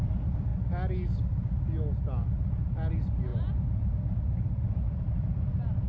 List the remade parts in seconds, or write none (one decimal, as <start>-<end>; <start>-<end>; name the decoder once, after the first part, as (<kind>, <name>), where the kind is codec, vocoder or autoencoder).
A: none